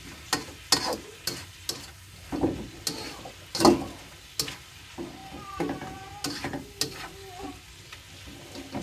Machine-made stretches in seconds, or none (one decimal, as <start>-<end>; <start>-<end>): none